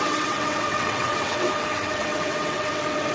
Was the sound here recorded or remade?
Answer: remade